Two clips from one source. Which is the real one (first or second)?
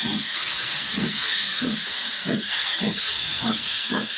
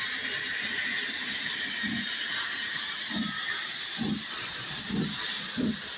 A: second